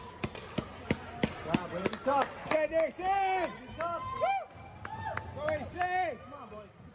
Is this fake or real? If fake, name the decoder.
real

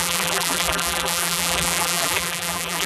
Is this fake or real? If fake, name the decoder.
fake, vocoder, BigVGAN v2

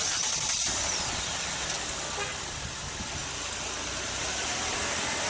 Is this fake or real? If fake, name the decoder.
real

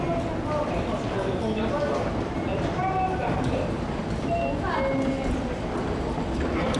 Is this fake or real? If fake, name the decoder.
real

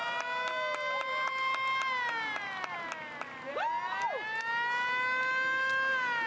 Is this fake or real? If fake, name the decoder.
real